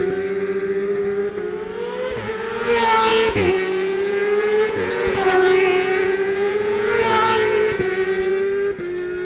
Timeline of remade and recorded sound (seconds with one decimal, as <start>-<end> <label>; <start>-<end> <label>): 0.0-3.1 recorded; 3.1-8.3 remade; 8.3-9.2 recorded